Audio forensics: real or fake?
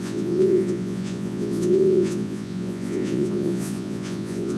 fake